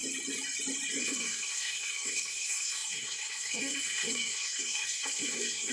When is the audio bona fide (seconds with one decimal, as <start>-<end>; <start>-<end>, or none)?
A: 0.0-1.0

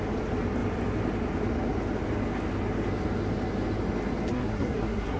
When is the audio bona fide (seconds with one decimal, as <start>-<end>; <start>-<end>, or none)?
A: 0.0-4.3

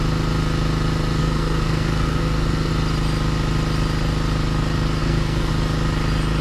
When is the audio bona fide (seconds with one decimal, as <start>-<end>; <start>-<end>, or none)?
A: 0.0-1.2; 2.7-5.0; 5.5-6.4

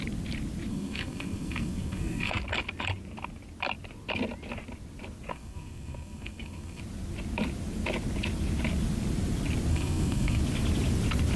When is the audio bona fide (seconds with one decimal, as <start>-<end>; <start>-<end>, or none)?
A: 0.0-0.7; 2.4-5.3; 6.8-9.7; 10.4-11.4

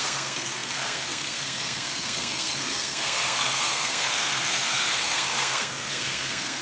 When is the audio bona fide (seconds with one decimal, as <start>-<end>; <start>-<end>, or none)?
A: none

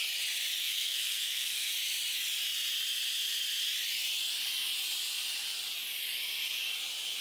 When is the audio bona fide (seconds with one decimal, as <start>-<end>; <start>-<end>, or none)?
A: 0.0-0.6; 1.7-7.2